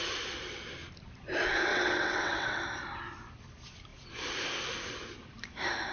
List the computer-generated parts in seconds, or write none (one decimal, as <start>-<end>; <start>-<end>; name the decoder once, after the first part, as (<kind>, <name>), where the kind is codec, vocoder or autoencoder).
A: 1.7-2.6 (vocoder, WaveNeXt)